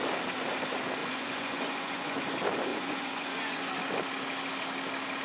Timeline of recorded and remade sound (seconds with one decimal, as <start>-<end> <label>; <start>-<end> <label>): 0.0-1.0 recorded; 1.0-2.2 remade; 2.2-2.7 recorded; 2.7-3.7 remade; 3.7-5.2 recorded